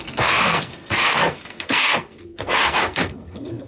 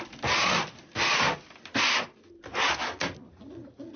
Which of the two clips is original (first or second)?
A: second